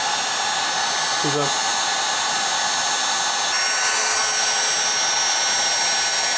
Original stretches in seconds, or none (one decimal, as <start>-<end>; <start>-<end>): 0.0-6.4